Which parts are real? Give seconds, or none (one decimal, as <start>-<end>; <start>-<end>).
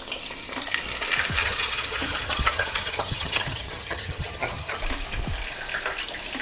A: 0.0-1.4; 4.8-6.4